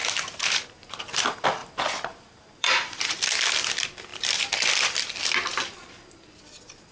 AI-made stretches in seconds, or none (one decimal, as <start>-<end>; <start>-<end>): 0.0-0.9; 1.6-3.2